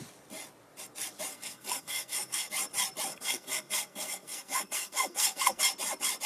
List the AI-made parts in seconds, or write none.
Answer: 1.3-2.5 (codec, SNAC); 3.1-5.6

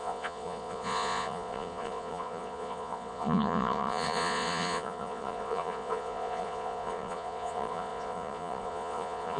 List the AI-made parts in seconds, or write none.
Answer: 0.0-9.4 (vocoder, Vocos)

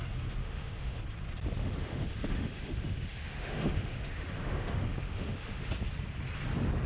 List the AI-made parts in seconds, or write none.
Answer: 0.4-1.0 (autoencoder, DAC-VAE); 1.6-5.7

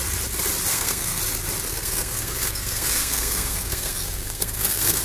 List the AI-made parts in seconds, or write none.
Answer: 0.7-1.2 (codec, SNAC); 1.7-5.0